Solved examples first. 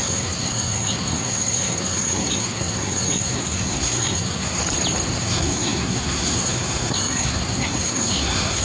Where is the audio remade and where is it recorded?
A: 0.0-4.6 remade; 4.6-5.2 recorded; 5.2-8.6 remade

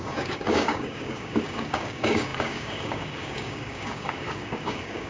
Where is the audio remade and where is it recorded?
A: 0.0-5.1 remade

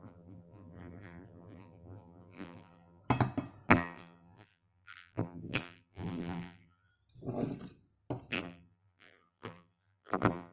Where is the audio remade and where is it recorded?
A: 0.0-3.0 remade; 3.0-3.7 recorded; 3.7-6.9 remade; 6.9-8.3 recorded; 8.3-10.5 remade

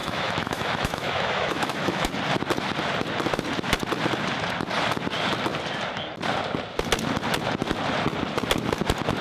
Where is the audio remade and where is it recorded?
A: 0.0-2.1 remade; 2.1-9.2 recorded

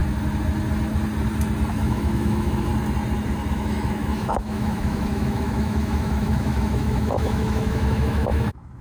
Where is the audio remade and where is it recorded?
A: 0.0-1.7 recorded; 1.7-2.7 remade; 2.7-3.5 recorded; 3.5-8.8 remade